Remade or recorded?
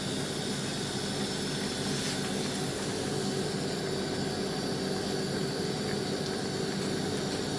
recorded